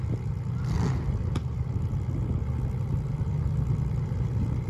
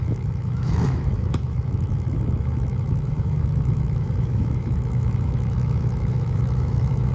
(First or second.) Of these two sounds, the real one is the first